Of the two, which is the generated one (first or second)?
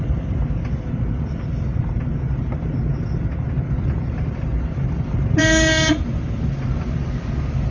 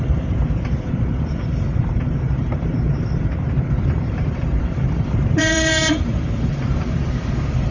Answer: second